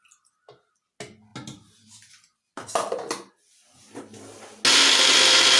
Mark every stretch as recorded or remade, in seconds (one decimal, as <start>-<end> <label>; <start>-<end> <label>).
0.0-5.6 recorded